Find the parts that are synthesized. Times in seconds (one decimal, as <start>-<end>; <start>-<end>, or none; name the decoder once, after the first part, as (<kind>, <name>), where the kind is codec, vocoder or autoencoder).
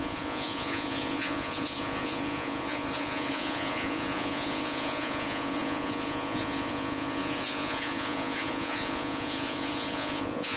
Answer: 0.0-10.6 (vocoder, Vocos)